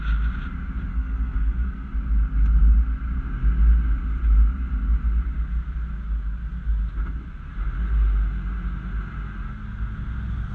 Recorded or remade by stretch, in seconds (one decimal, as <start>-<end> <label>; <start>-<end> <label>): 0.0-0.9 recorded; 0.9-1.9 remade; 1.9-10.5 recorded